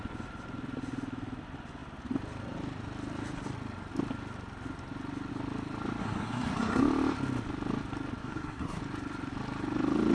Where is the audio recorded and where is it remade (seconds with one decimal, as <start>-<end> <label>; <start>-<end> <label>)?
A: 0.0-6.0 recorded; 6.0-6.8 remade; 6.8-8.2 recorded; 8.2-8.8 remade; 8.8-10.1 recorded